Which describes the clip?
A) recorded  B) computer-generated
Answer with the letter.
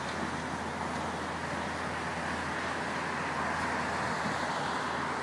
A